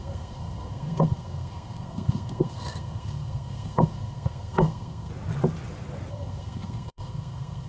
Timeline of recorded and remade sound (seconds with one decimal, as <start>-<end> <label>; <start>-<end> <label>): 0.0-5.1 remade; 5.1-6.1 recorded; 6.1-7.7 remade

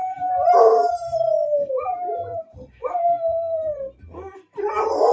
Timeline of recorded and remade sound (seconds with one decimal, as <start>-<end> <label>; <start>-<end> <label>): 0.0-5.1 remade

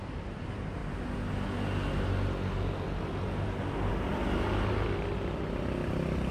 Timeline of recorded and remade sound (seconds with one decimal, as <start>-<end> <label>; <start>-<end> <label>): 0.0-6.3 recorded